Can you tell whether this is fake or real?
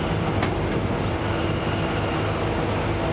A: real